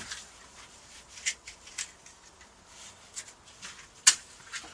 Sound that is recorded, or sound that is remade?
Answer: recorded